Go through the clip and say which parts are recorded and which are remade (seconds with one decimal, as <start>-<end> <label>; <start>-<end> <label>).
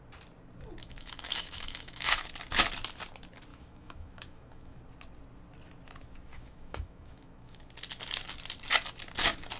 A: 0.0-0.8 recorded; 0.8-2.3 remade; 2.3-3.5 recorded; 3.5-4.8 remade; 4.8-6.3 recorded; 6.3-7.7 remade; 7.7-9.6 recorded